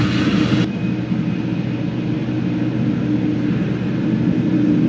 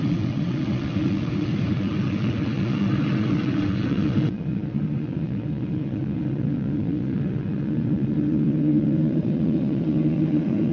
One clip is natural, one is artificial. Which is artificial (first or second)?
second